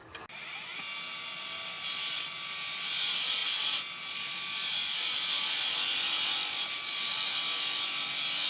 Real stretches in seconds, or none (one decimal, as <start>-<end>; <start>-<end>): 0.0-8.5